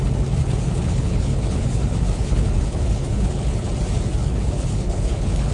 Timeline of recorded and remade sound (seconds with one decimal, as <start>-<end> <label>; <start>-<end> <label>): 0.0-0.4 recorded; 0.4-3.7 remade; 3.7-4.2 recorded; 4.2-5.5 remade